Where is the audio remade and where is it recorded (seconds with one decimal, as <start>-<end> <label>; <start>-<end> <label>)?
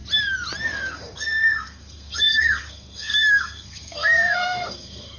0.0-0.7 recorded; 0.7-5.2 remade